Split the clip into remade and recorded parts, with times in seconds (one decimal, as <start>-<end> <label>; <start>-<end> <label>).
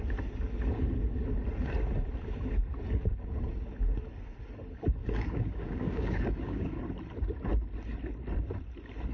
0.0-5.0 recorded; 5.0-6.8 remade; 6.8-9.1 recorded